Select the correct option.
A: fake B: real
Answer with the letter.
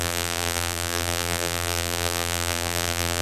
A